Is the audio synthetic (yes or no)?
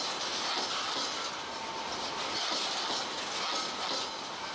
no